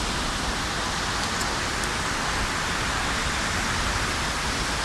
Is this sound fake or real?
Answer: real